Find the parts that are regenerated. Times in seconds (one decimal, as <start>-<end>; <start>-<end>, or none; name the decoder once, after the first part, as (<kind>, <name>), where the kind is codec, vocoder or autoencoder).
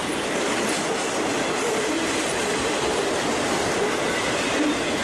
0.0-3.0 (vocoder, BigVGAN v2)